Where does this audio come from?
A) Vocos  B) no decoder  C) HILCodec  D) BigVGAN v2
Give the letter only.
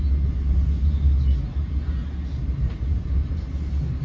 B